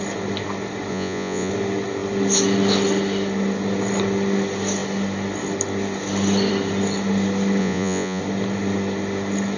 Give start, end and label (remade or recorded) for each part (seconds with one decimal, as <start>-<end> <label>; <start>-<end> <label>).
0.0-0.9 recorded; 0.9-1.5 remade; 1.5-7.6 recorded; 7.6-8.2 remade; 8.2-9.6 recorded